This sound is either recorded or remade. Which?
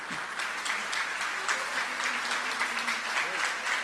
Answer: recorded